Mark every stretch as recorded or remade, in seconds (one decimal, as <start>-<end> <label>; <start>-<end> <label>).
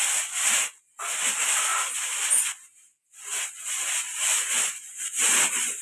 0.0-5.8 recorded